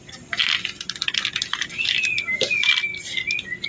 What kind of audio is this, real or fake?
real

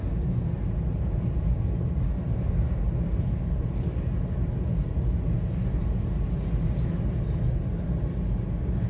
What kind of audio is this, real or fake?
real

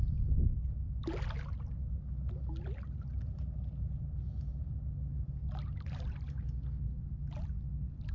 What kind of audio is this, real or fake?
real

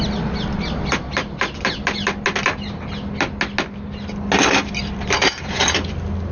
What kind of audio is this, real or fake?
real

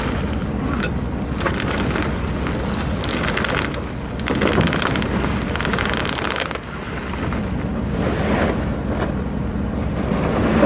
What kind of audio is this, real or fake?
real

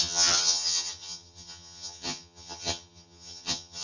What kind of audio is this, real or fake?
fake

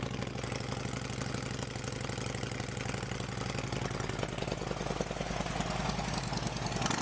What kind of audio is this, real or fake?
real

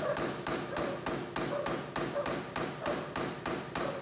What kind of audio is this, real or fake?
real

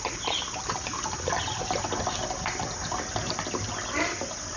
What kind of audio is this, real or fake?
real